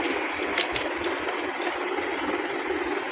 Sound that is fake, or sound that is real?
real